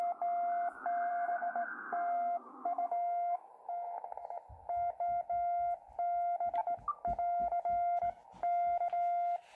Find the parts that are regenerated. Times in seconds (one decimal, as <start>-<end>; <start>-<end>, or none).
1.1-3.5